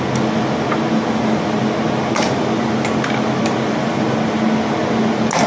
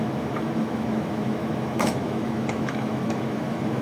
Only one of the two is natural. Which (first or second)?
first